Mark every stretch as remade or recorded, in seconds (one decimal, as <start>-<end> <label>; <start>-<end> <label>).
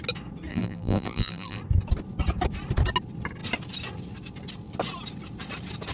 0.0-0.5 recorded; 0.5-1.6 remade; 1.6-5.9 recorded